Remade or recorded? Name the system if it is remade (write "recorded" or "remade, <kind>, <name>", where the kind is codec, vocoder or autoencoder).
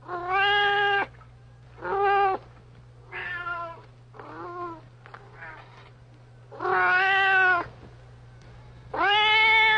recorded